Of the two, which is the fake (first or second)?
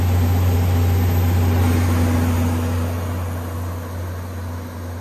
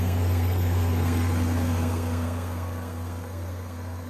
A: second